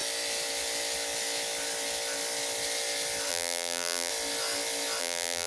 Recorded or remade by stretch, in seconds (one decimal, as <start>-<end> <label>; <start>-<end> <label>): 0.0-3.3 recorded; 3.3-4.1 remade; 4.1-5.0 recorded; 5.0-5.5 remade